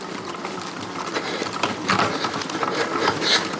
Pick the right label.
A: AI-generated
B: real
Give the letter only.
B